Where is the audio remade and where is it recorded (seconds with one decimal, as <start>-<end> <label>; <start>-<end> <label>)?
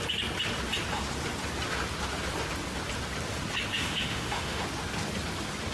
0.0-3.7 recorded; 3.7-4.6 remade; 4.6-5.7 recorded